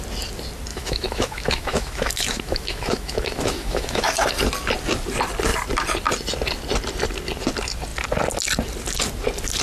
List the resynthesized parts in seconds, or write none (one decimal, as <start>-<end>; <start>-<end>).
0.7-4.3